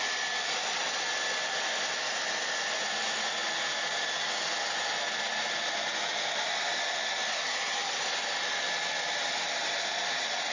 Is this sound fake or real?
real